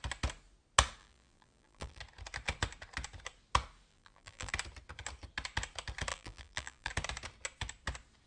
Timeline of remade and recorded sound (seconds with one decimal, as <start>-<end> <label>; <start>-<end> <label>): 0.0-1.0 recorded; 1.0-2.0 remade; 2.0-3.9 recorded; 3.9-4.5 remade; 4.5-6.1 recorded; 6.1-6.9 remade; 6.9-8.3 recorded